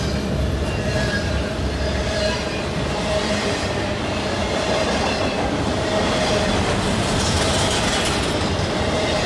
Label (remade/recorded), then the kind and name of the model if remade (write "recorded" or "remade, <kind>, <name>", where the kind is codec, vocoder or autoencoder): remade, vocoder, BigVGAN v2